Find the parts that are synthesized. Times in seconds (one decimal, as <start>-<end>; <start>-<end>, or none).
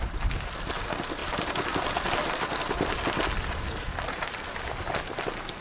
none